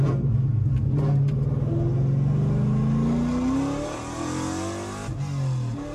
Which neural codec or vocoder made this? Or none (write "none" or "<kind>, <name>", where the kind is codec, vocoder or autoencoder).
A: none